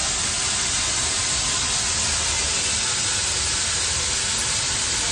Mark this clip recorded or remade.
recorded